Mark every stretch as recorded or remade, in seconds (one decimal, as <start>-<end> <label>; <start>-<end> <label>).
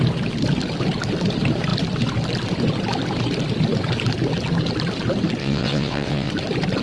0.0-5.4 recorded; 5.4-6.3 remade; 6.3-6.8 recorded